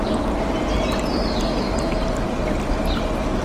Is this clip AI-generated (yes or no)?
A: no